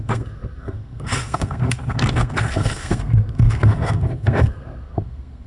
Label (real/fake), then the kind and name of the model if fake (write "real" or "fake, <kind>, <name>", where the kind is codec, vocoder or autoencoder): fake, codec, SNAC